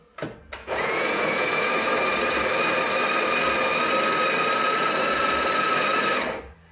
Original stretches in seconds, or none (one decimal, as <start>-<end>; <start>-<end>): 0.0-0.6; 1.7-6.7